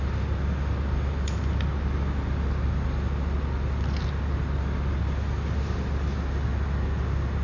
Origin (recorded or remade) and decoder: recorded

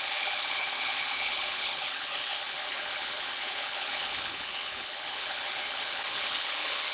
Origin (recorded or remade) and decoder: remade, codec, HILCodec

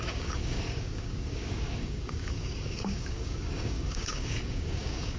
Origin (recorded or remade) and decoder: remade, codec, DAC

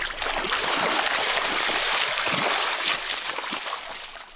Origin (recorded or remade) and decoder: recorded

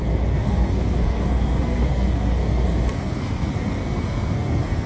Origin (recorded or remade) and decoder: remade, codec, SNAC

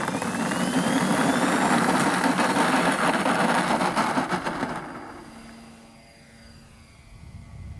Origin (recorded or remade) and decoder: recorded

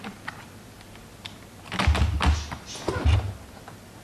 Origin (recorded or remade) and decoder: recorded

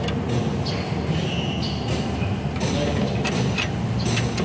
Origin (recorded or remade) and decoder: recorded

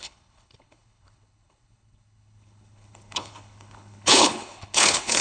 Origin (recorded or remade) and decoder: remade, codec, HILCodec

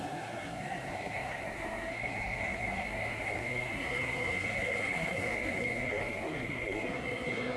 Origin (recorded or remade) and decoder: remade, codec, SNAC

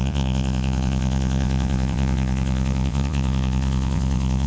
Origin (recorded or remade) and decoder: remade, vocoder, Vocos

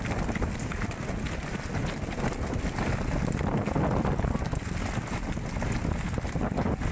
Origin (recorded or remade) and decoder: recorded